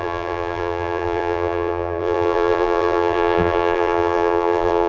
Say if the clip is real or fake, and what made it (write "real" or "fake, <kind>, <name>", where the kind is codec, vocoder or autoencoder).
fake, vocoder, BigVGAN v2